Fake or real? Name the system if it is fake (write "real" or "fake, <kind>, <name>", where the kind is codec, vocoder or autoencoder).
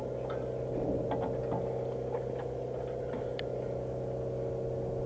real